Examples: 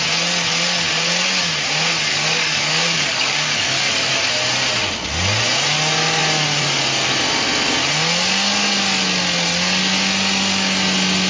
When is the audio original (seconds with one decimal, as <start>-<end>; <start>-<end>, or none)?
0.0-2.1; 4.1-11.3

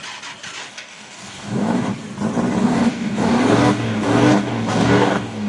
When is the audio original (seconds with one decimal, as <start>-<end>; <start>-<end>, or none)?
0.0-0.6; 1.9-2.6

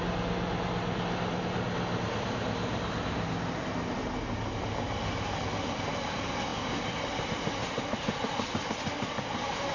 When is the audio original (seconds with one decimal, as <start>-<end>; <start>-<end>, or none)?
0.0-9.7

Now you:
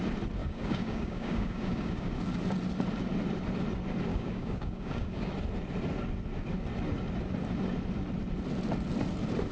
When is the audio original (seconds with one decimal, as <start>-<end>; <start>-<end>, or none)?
0.0-0.4; 2.1-4.1; 5.3-9.5

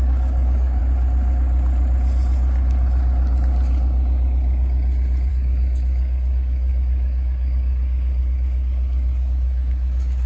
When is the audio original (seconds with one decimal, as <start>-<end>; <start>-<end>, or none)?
0.8-5.3